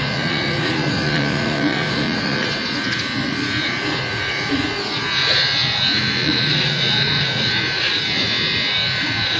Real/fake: fake